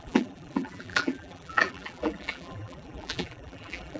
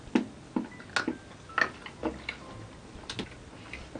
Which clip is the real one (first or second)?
second